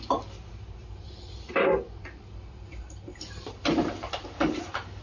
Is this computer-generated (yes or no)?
yes